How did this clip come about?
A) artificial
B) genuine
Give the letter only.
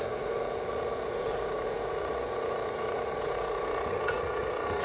A